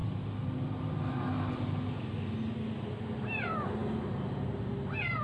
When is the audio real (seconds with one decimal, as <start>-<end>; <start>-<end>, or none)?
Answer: 0.0-5.2